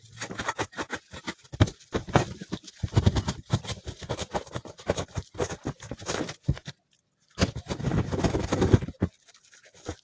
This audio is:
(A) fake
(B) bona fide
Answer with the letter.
B